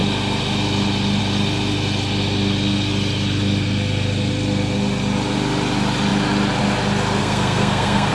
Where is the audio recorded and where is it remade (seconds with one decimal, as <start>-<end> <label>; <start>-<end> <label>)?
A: 0.0-7.2 recorded; 7.2-8.1 remade